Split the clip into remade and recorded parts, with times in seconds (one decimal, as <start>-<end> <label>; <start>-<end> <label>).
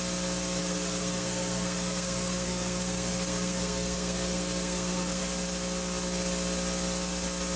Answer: 0.0-0.6 recorded; 0.6-5.2 remade; 5.2-7.6 recorded